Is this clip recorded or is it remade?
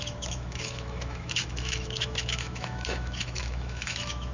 remade